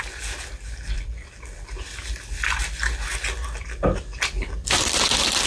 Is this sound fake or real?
real